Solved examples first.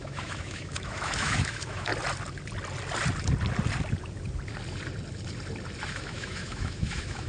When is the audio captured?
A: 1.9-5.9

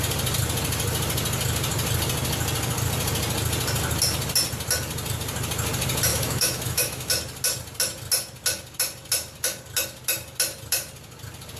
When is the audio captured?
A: 0.0-6.1; 7.1-11.6

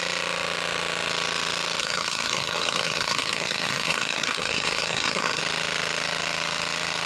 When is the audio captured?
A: 0.0-1.8; 5.4-7.1

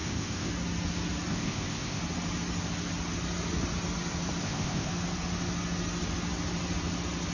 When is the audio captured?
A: 0.5-1.3; 2.0-4.4; 4.9-7.3

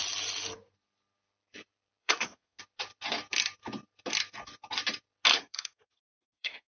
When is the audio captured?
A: 0.0-2.0; 2.6-5.3

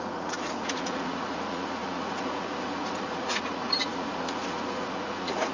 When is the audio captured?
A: none

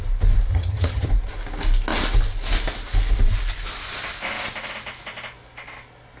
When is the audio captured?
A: 0.0-0.5; 1.1-6.2